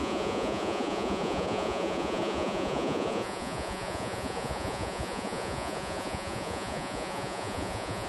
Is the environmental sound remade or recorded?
remade